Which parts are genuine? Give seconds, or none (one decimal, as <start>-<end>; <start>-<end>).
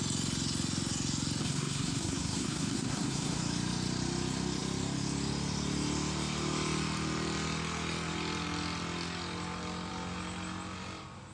0.0-1.4; 3.4-11.3